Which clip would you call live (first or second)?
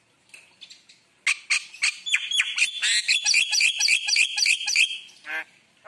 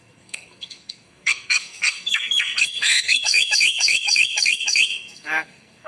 first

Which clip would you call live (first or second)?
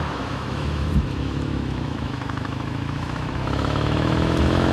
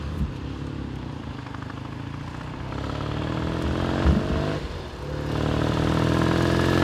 second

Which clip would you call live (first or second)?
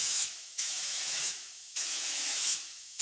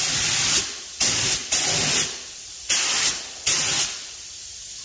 second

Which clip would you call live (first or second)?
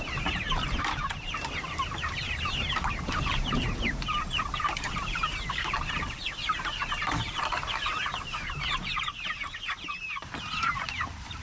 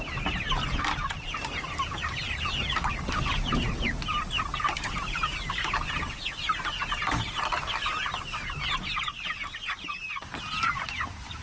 second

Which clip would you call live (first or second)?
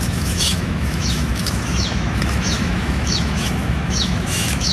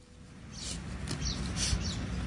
second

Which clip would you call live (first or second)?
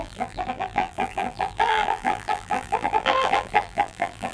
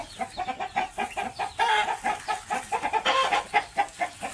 second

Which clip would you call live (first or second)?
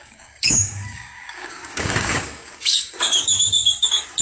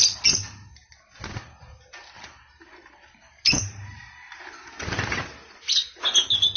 second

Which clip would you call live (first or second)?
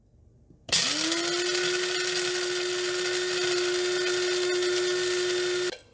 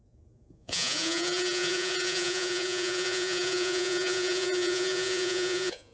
first